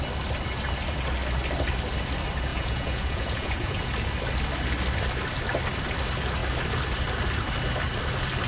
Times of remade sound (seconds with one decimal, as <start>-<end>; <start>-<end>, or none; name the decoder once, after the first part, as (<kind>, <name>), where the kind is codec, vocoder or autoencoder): 2.5-3.9 (vocoder, Vocos)